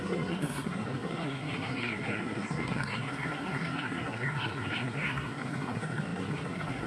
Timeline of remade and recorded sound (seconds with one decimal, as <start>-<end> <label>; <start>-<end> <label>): 0.0-6.9 remade